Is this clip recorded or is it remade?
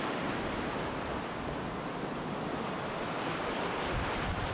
recorded